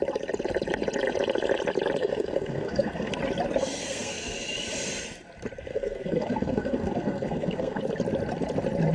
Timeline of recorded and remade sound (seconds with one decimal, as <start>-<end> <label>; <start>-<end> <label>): 0.0-2.0 recorded; 2.0-3.1 remade; 3.1-3.8 recorded; 3.8-4.4 remade; 4.4-5.7 recorded; 5.7-7.8 remade; 7.8-8.9 recorded